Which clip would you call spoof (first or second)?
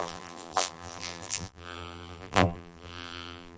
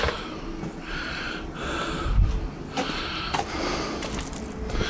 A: first